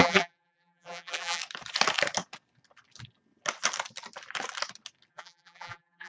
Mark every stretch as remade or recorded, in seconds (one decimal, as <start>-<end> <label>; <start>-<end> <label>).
0.0-1.4 remade; 1.4-5.1 recorded; 5.1-6.1 remade